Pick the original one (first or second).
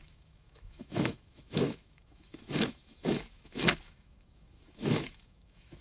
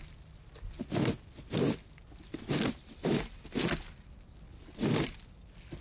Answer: second